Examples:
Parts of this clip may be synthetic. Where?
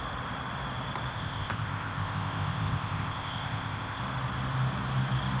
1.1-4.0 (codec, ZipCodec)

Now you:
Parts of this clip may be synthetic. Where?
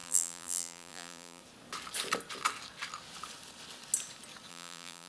0.0-1.4 (vocoder, BigVGAN v2); 4.5-5.1